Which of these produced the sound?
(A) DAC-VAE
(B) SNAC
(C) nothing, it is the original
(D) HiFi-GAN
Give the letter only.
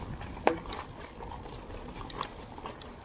C